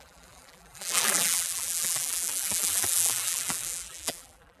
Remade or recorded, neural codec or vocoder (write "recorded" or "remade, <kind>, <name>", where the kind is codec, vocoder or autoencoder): remade, vocoder, BigVGAN v2